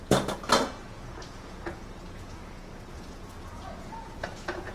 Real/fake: fake